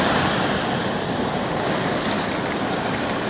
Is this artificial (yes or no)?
yes